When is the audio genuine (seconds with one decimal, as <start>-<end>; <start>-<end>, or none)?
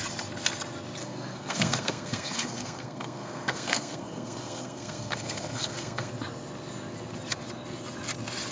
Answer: 0.0-1.0; 6.1-8.5